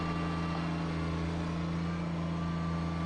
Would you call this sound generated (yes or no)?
no